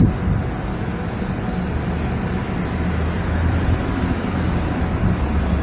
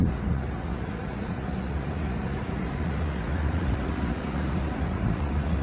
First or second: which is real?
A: first